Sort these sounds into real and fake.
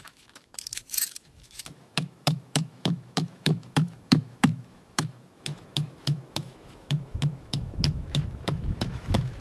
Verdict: fake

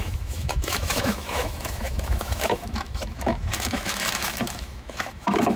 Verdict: fake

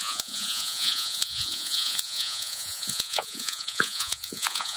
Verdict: fake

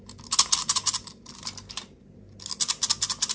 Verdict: real